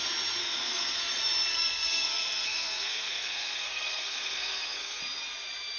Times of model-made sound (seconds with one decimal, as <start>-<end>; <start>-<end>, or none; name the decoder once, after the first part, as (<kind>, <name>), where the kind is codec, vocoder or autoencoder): 0.4-1.0 (codec, SNAC); 1.5-5.0